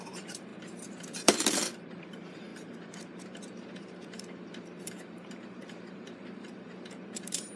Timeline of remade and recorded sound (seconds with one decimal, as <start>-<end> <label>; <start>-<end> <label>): 0.0-7.6 remade